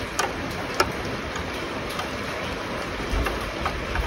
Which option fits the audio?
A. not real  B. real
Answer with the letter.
A